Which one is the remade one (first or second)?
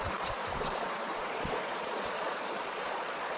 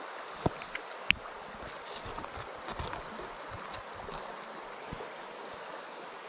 first